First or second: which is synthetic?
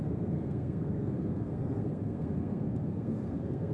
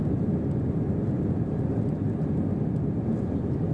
first